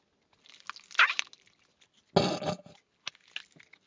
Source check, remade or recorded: recorded